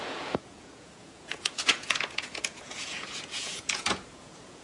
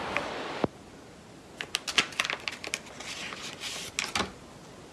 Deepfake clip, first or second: first